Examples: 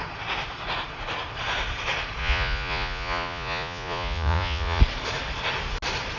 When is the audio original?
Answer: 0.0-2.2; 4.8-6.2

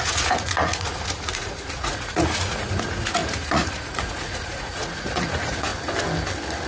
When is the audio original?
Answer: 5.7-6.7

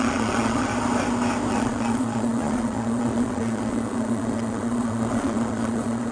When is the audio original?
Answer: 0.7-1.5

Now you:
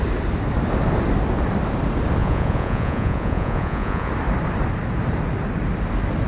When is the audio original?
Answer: 0.0-2.2; 4.1-6.3

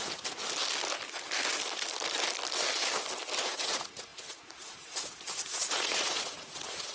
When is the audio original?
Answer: 0.4-3.4

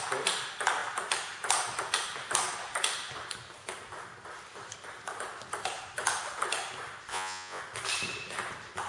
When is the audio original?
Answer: 0.0-7.1; 7.6-8.9